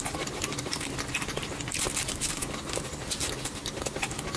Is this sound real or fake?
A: real